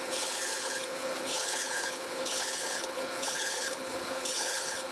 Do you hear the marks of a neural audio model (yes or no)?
yes